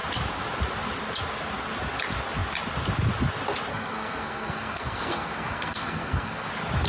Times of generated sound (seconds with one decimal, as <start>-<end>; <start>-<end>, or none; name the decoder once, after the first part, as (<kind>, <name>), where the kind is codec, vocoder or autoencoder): 3.7-6.5 (codec, SNAC)